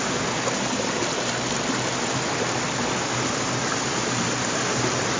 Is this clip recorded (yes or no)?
yes